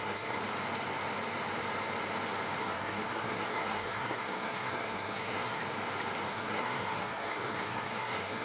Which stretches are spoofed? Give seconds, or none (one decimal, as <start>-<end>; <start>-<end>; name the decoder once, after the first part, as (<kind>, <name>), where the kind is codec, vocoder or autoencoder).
0.0-0.4 (codec, SNAC); 2.6-5.6; 6.3-8.4